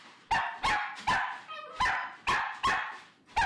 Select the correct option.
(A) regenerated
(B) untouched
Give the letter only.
B